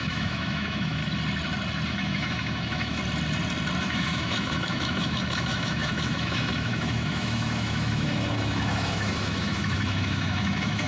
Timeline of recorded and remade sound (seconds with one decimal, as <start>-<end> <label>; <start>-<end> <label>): 0.0-1.0 remade; 1.0-1.9 recorded; 1.9-3.0 remade; 3.0-3.8 recorded; 3.8-10.9 remade

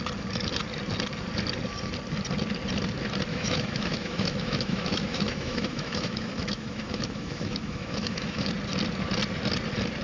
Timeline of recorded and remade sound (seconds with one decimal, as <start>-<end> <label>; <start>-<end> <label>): 0.0-3.3 recorded; 3.3-8.5 remade; 8.5-10.0 recorded

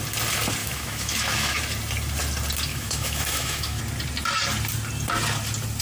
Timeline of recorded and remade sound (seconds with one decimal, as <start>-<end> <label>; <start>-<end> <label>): 0.0-0.6 recorded; 0.6-1.6 remade; 1.6-2.7 recorded; 2.7-3.8 remade; 3.8-5.8 recorded

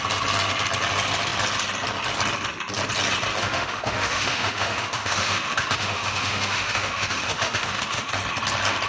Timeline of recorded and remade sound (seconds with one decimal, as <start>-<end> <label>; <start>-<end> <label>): 0.0-3.4 recorded; 3.4-8.1 remade; 8.1-8.9 recorded